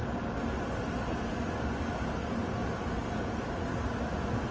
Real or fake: real